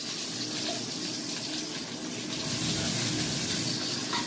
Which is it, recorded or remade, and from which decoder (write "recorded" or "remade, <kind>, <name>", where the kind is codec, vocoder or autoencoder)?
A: recorded